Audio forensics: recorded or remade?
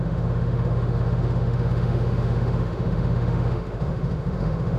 remade